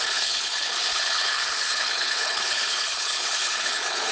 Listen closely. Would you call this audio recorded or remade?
remade